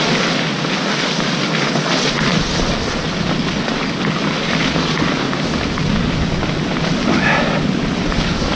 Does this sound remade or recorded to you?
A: recorded